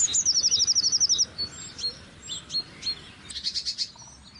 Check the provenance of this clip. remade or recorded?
recorded